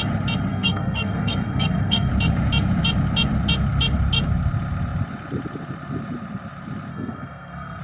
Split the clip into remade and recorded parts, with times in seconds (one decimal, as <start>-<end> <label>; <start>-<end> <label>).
0.0-0.5 recorded; 0.5-2.1 remade; 2.1-6.9 recorded; 6.9-7.8 remade

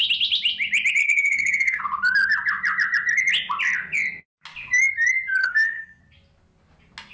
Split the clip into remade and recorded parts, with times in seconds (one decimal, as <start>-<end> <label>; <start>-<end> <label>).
0.0-1.0 recorded; 1.0-1.8 remade; 1.8-5.4 recorded; 5.4-6.0 remade; 6.0-7.1 recorded

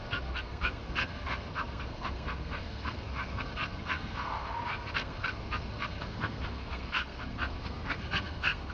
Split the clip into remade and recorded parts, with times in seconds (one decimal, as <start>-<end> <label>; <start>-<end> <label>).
0.0-8.7 remade

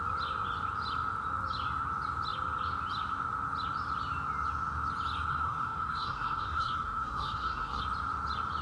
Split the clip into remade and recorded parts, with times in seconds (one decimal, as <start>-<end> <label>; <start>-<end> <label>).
0.0-5.3 recorded; 5.3-7.8 remade; 7.8-8.6 recorded